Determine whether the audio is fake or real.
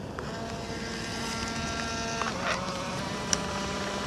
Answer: real